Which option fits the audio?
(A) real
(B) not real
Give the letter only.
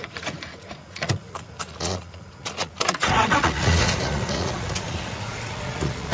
B